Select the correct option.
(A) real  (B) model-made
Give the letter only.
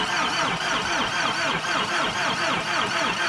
B